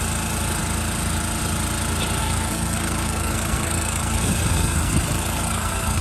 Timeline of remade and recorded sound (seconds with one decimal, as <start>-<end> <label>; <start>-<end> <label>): 0.0-2.2 recorded; 2.2-6.0 remade

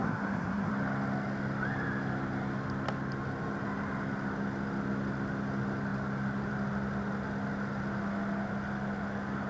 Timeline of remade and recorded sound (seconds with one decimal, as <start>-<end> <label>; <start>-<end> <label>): 0.0-0.7 remade; 0.7-9.5 recorded

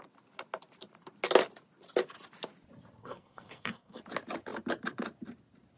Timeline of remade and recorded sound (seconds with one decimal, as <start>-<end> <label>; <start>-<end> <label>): 0.0-3.0 recorded; 3.0-4.0 remade; 4.0-5.8 recorded

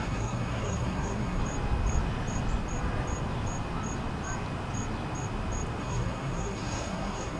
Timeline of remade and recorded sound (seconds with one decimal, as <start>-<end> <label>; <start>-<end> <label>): 0.0-1.4 remade; 1.4-5.8 recorded; 5.8-7.4 remade

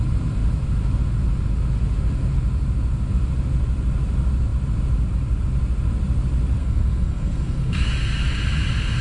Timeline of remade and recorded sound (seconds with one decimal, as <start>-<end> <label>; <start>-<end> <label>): 0.0-6.6 recorded; 6.6-7.9 remade; 7.9-9.0 recorded

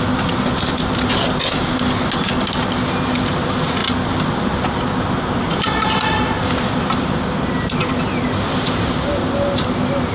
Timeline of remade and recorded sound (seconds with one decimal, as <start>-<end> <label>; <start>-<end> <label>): 0.0-10.1 recorded

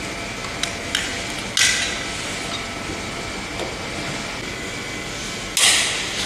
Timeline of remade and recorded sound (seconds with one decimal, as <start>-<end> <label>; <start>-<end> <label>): 0.0-6.3 recorded